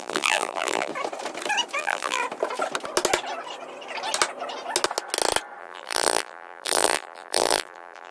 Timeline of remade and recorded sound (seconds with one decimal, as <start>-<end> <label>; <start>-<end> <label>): 0.0-0.9 remade; 0.9-1.8 recorded; 1.8-2.2 remade; 2.2-5.6 recorded; 5.6-8.1 remade